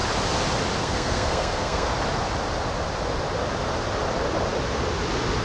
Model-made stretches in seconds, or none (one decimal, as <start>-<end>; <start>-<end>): 0.8-1.9